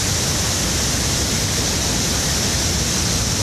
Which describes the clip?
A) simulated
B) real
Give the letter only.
B